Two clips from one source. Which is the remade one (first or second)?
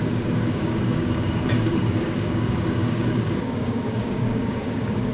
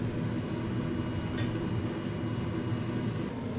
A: first